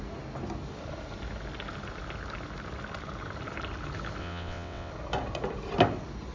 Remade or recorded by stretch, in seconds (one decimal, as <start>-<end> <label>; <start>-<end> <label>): 0.0-4.2 recorded; 4.2-4.9 remade; 4.9-6.3 recorded